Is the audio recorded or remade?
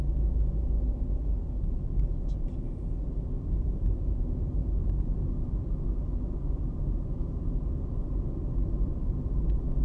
recorded